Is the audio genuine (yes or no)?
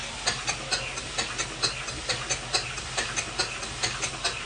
yes